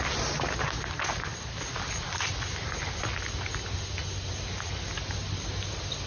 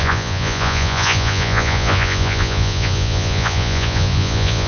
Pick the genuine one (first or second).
first